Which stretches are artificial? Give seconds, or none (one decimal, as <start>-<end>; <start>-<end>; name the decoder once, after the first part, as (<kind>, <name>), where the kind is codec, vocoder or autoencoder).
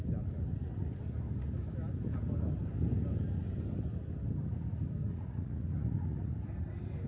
5.1-6.3 (vocoder, Vocos)